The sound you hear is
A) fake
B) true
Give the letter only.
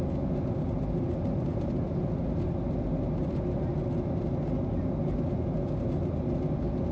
B